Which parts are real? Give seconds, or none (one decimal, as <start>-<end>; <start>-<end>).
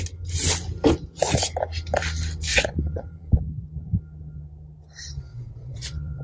0.0-2.5; 3.4-5.3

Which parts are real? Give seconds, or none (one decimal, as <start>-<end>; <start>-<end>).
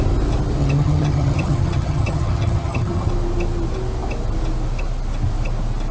0.0-0.6; 3.1-5.9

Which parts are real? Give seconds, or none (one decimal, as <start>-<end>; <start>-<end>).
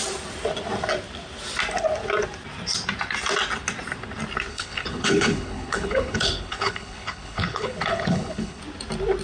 0.0-4.5; 8.6-9.2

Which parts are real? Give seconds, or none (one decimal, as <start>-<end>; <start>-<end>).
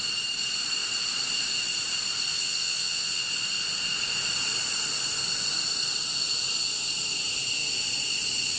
0.0-2.3; 3.2-8.6